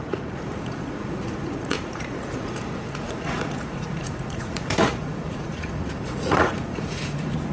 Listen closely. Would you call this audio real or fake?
fake